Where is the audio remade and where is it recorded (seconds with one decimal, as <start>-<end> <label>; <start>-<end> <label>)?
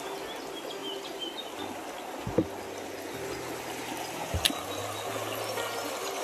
0.0-6.2 recorded